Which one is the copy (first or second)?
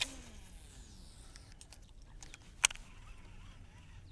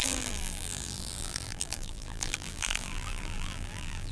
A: second